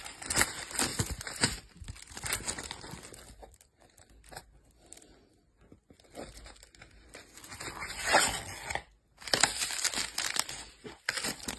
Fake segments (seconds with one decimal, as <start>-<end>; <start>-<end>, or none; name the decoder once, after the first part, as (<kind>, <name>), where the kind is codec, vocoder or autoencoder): none